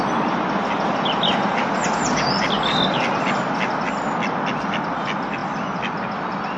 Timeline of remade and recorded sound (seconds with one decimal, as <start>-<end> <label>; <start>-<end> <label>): 0.0-6.6 recorded